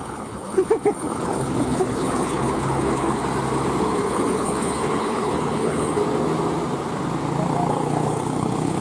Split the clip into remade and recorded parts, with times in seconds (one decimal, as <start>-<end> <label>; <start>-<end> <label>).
0.0-3.2 remade; 3.2-3.8 recorded; 3.8-6.0 remade; 6.0-7.7 recorded; 7.7-8.8 remade